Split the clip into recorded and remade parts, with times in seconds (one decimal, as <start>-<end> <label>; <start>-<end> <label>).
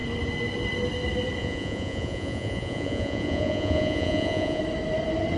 0.0-1.4 recorded; 1.4-4.6 remade; 4.6-5.4 recorded